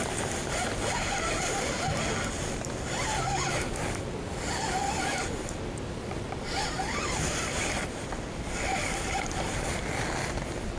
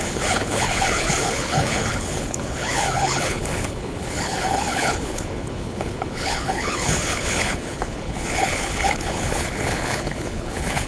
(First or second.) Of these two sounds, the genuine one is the first